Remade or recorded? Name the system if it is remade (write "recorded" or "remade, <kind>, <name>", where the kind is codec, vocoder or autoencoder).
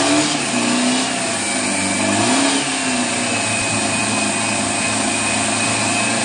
recorded